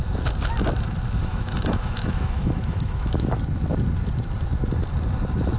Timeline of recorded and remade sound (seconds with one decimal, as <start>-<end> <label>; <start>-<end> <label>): 0.0-1.2 recorded; 1.2-3.4 remade; 3.4-5.6 recorded